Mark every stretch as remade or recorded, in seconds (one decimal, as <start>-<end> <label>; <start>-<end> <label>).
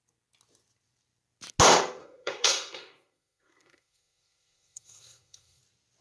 0.0-2.0 recorded; 2.0-5.6 remade; 5.6-6.0 recorded